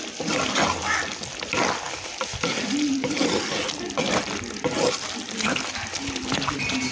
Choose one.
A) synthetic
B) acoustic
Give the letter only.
B